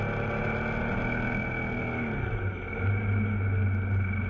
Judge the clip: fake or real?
real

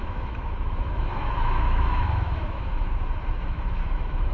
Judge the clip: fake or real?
fake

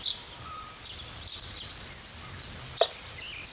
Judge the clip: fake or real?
real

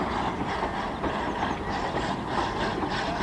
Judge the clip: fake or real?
real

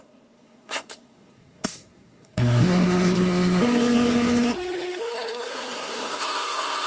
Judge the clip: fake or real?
fake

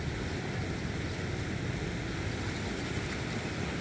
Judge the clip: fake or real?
real